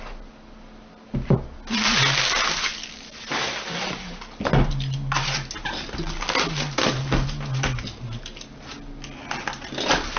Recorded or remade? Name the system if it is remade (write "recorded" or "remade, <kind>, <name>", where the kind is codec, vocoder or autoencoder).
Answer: recorded